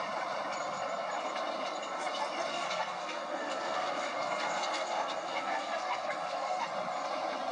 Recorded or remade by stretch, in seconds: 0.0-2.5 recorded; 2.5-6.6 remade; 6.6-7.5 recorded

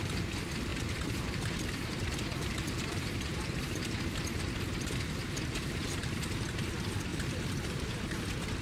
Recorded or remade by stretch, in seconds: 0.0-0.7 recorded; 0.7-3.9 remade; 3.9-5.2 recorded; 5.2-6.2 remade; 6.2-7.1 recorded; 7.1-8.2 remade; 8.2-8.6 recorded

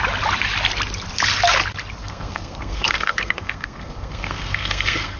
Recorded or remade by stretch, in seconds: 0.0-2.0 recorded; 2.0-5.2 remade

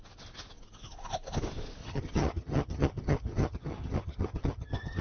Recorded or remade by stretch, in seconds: 0.0-1.8 recorded; 1.8-5.0 remade